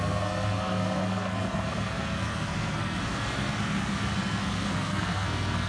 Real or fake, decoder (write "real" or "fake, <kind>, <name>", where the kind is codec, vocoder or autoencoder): fake, codec, SNAC